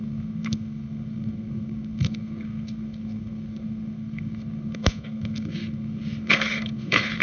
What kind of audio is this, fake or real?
fake